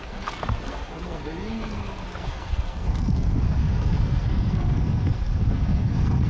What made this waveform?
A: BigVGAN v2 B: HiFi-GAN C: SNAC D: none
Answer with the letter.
C